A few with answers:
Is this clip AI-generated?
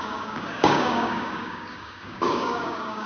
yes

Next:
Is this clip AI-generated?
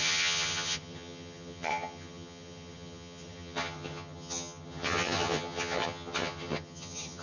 yes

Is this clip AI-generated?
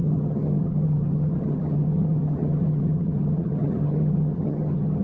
yes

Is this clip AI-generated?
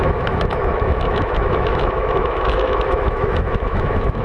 yes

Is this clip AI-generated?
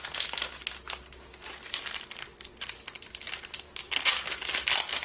no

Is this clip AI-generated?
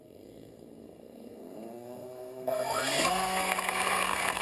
yes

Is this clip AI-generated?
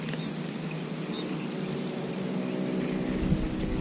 no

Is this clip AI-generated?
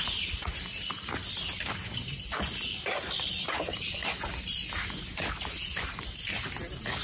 no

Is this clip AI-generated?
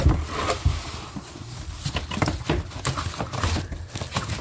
no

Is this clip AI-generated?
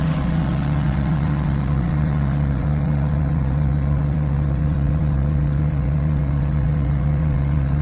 yes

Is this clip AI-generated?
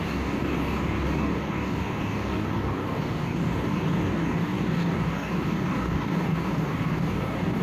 yes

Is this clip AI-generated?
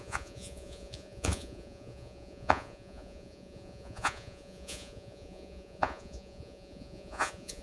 yes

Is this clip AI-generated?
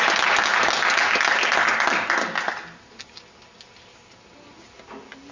no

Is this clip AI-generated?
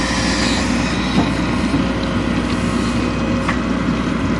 no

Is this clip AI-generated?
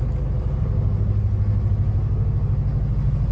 no